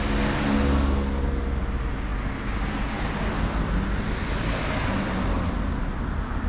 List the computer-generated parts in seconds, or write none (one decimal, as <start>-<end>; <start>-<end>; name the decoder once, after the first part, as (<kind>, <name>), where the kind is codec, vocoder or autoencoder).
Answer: none